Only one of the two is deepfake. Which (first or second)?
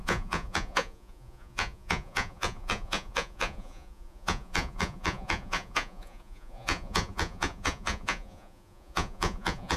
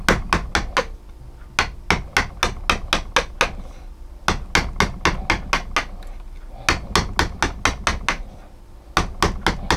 first